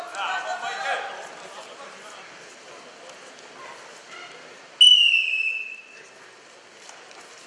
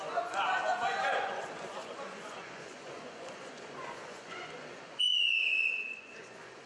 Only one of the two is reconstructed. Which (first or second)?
second